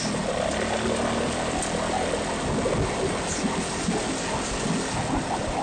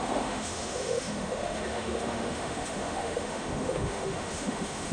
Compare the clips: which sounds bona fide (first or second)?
first